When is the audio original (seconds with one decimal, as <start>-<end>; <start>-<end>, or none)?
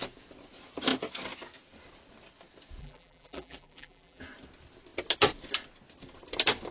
0.0-2.8; 4.2-6.7